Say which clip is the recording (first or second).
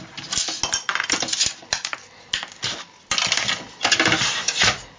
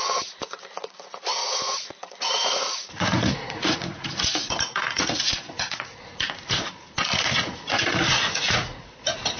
first